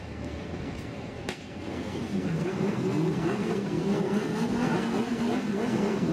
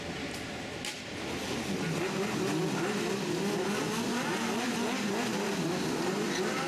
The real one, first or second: second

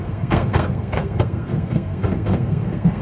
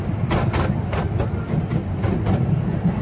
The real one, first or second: second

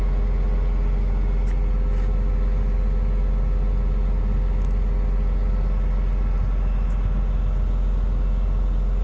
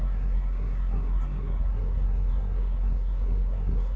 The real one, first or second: first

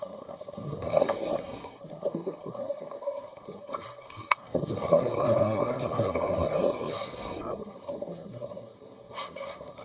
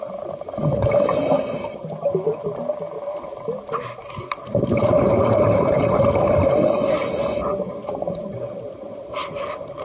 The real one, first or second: second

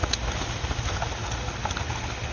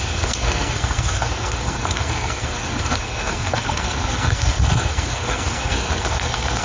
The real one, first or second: first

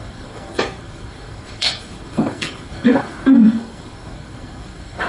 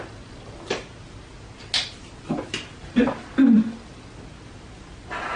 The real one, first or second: second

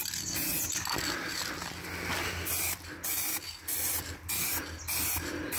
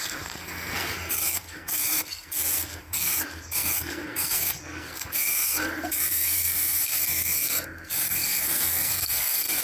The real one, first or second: first